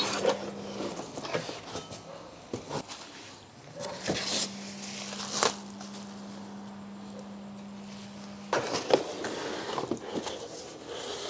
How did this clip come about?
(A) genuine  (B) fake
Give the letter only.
A